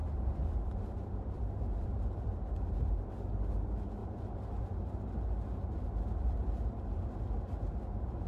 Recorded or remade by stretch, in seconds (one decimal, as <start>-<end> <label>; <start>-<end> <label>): 0.0-2.7 remade; 2.7-4.0 recorded; 4.0-4.6 remade; 4.6-8.3 recorded